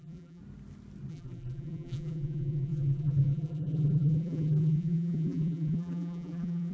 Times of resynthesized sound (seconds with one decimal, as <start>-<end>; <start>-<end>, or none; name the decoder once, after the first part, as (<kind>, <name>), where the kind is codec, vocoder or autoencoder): 0.0-0.4 (vocoder, BigVGAN v2); 1.1-6.7